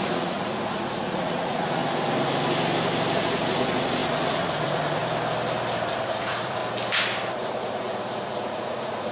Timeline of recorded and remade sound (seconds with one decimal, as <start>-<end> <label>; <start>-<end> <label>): 0.0-1.8 remade; 1.8-3.1 recorded; 3.1-5.0 remade; 5.0-6.0 recorded; 6.0-6.6 remade; 6.6-7.6 recorded; 7.6-9.1 remade